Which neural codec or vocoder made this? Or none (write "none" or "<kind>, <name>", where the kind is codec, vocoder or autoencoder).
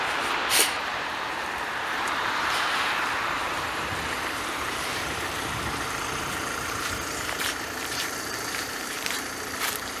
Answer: vocoder, BigVGAN v2